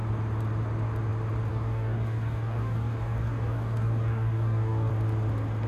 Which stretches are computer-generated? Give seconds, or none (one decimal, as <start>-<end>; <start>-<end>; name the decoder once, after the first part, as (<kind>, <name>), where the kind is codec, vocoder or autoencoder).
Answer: 1.5-4.9 (codec, DAC)